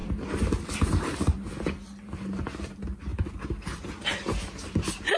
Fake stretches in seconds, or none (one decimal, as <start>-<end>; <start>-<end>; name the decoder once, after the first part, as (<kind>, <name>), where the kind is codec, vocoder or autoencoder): none